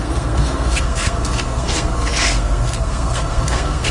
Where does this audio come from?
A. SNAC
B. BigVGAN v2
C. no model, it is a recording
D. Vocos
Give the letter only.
A